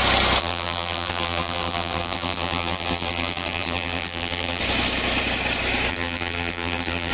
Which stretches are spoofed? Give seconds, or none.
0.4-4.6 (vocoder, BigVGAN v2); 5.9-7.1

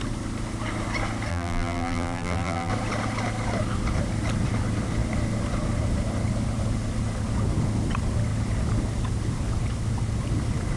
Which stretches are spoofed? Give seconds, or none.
1.3-2.7 (vocoder, BigVGAN v2)